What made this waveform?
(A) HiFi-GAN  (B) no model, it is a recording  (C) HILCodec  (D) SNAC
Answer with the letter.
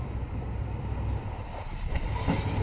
B